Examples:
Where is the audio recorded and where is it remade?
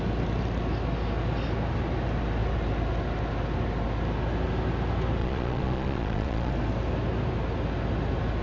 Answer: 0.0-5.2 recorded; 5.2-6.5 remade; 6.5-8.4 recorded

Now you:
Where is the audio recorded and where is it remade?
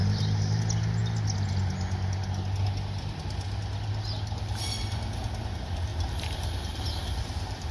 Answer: 0.0-0.6 remade; 0.6-5.9 recorded; 5.9-7.7 remade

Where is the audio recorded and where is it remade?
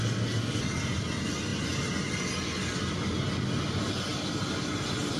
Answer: 0.0-5.2 recorded